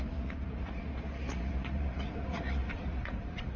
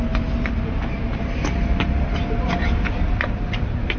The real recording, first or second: second